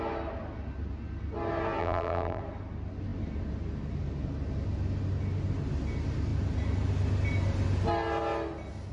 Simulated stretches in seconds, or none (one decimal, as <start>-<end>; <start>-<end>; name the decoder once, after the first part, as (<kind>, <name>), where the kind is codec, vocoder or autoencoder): 1.8-2.4 (vocoder, BigVGAN v2)